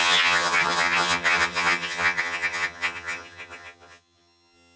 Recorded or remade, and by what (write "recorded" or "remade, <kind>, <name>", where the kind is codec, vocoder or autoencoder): remade, vocoder, HiFi-GAN